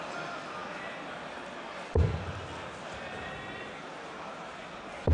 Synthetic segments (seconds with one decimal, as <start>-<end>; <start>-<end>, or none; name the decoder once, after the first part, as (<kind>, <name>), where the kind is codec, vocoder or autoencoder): none